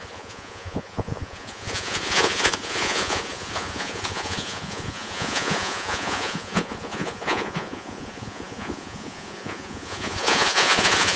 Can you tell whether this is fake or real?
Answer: fake